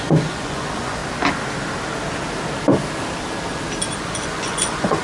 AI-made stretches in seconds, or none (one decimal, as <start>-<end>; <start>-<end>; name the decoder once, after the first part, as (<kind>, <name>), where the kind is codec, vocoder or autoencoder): 0.0-1.0 (vocoder, Vocos); 4.0-5.0